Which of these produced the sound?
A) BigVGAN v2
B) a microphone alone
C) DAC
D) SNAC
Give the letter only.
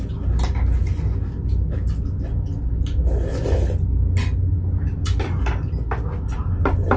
B